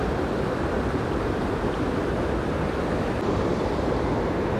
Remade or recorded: recorded